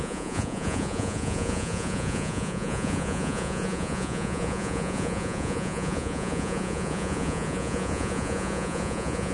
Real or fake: fake